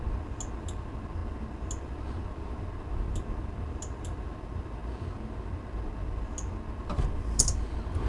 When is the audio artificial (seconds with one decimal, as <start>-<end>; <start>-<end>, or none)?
none